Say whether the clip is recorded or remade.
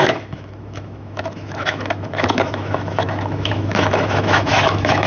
remade